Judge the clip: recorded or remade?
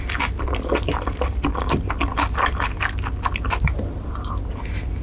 recorded